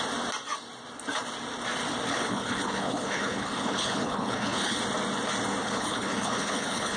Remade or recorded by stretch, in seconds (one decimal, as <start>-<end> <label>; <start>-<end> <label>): 0.0-2.1 recorded; 2.1-4.8 remade; 4.8-5.6 recorded; 5.6-7.0 remade